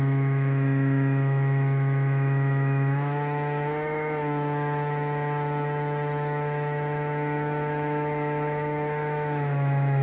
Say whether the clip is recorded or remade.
remade